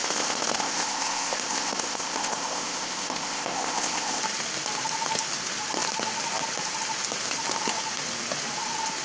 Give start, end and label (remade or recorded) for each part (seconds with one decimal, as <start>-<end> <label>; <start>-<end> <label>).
0.0-4.2 remade; 4.2-9.0 recorded